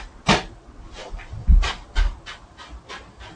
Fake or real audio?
real